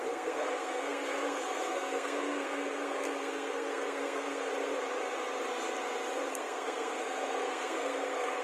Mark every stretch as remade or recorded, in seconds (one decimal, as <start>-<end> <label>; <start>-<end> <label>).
0.0-4.5 remade; 4.5-6.3 recorded; 6.3-8.4 remade